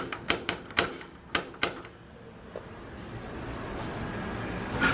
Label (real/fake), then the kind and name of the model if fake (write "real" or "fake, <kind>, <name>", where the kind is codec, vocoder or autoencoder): real